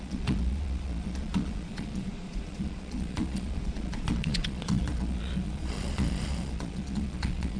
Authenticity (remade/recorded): remade